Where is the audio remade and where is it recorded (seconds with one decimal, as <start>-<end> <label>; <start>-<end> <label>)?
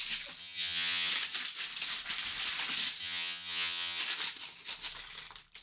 0.0-0.4 recorded; 0.4-1.1 remade; 1.1-3.0 recorded; 3.0-4.0 remade; 4.0-5.6 recorded